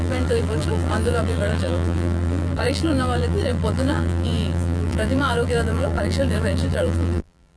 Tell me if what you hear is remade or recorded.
remade